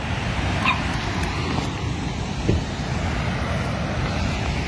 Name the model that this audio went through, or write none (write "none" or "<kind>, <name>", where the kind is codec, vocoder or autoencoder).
none